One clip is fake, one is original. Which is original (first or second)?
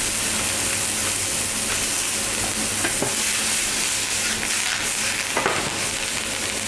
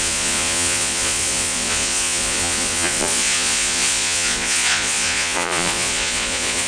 first